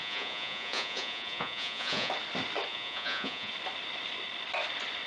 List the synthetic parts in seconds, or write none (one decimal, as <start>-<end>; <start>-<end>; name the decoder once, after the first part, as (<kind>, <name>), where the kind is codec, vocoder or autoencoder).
0.0-2.1 (vocoder, Vocos); 2.7-3.5